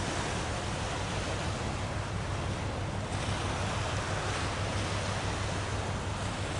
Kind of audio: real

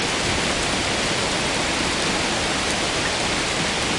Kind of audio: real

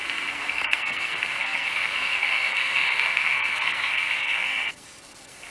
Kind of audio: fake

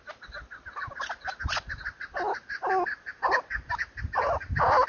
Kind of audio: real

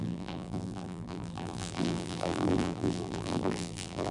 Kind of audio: fake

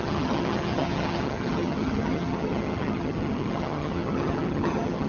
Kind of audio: fake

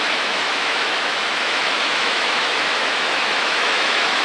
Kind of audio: fake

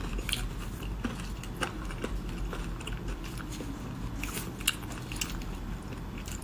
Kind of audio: real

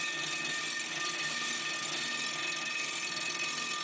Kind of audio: real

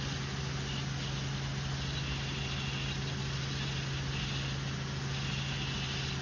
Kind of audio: real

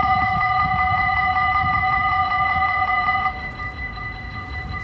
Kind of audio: fake